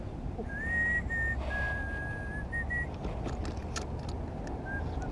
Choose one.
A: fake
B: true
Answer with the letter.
B